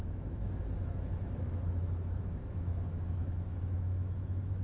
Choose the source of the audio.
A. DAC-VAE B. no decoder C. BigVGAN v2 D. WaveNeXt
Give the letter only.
A